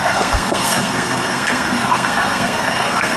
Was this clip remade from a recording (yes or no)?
yes